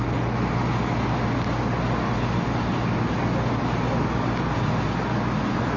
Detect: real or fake real